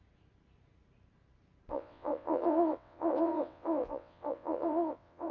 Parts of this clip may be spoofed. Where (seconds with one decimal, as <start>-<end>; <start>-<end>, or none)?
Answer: 1.7-5.3

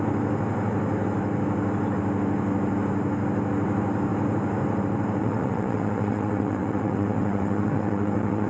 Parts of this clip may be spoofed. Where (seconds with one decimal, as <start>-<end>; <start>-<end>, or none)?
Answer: 5.2-8.5

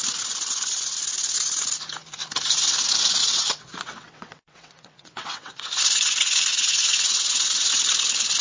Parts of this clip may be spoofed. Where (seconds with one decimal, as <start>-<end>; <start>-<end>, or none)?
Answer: 3.2-5.7; 6.5-7.8

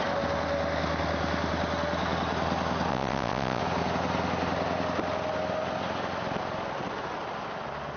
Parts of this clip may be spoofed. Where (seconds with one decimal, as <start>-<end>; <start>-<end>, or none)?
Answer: 2.9-3.6